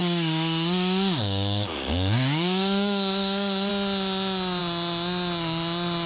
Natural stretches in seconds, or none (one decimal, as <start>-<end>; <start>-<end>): 3.7-6.1